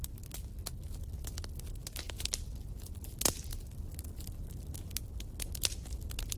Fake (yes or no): no